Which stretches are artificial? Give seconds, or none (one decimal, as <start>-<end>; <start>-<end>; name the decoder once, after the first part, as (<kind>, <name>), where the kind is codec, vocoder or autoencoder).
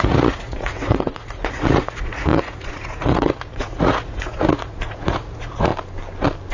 0.0-5.7 (vocoder, Vocos)